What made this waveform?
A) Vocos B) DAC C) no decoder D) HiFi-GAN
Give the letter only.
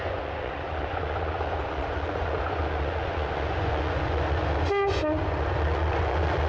A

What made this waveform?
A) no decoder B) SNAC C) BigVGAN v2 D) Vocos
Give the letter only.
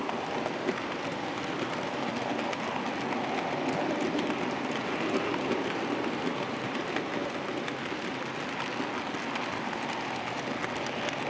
A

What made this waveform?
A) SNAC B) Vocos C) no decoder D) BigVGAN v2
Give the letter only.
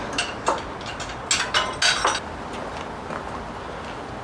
C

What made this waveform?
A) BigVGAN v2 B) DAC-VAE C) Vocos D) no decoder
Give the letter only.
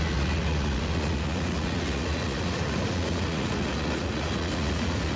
C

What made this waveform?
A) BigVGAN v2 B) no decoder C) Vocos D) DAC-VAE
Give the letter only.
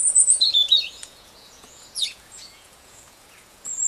C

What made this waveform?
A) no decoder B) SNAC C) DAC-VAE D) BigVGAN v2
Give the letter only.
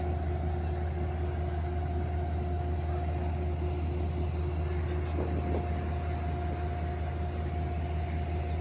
A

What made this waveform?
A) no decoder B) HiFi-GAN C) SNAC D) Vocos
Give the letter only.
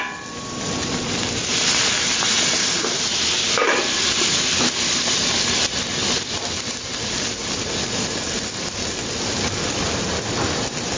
A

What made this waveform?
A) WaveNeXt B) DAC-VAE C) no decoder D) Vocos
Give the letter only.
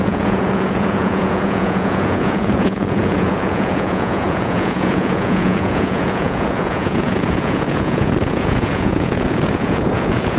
D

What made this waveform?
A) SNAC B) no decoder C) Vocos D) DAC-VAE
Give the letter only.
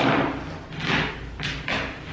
B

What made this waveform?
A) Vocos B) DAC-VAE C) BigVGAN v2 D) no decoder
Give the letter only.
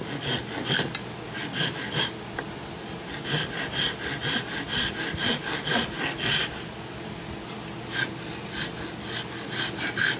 D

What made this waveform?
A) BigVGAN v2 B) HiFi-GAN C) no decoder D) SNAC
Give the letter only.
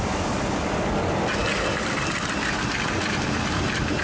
C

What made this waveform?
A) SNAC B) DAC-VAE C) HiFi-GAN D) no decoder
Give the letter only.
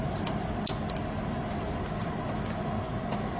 D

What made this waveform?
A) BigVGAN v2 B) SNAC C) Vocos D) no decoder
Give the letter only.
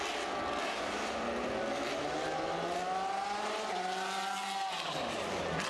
D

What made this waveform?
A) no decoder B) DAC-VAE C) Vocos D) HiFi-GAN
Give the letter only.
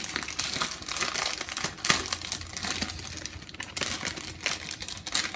A